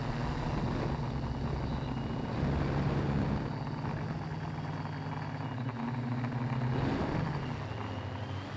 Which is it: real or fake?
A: real